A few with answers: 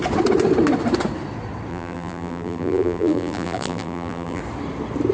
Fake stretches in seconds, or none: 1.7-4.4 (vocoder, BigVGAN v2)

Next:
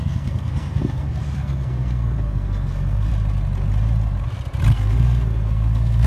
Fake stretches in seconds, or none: 0.0-3.1 (codec, SNAC); 4.7-6.1